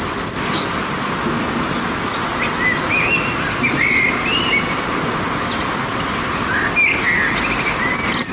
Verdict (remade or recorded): recorded